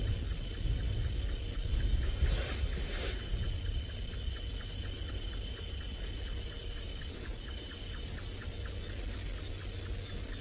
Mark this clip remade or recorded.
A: recorded